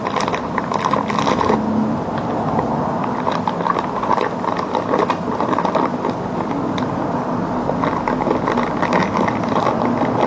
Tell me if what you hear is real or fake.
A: real